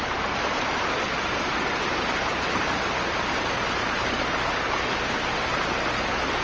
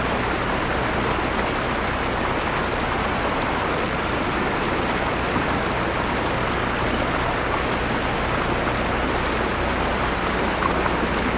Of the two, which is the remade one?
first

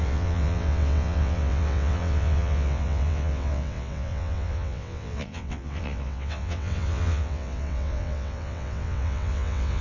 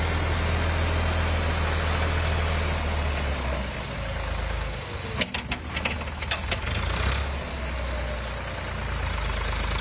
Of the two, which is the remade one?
first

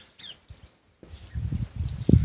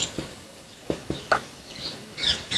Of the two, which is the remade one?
second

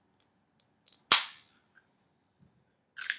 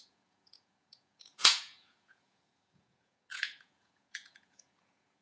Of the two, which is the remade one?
second